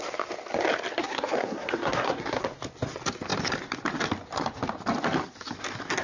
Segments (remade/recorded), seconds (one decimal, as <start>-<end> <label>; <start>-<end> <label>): 0.0-0.9 recorded; 0.9-2.4 remade; 2.4-6.0 recorded